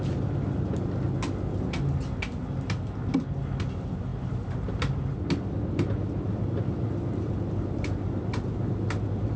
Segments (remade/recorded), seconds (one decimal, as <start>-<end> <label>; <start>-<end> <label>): 0.0-9.4 recorded